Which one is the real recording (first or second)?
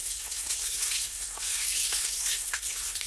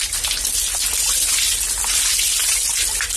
second